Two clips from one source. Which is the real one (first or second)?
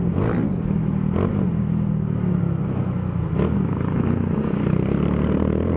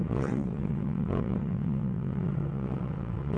first